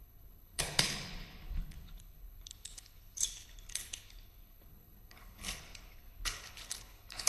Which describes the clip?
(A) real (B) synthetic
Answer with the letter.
B